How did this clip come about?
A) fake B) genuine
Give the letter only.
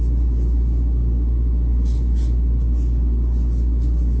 B